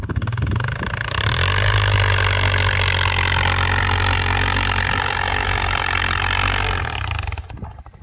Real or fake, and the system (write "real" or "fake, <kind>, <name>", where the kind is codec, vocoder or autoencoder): real